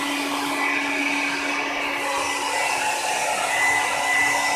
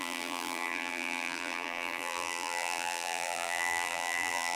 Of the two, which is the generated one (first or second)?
second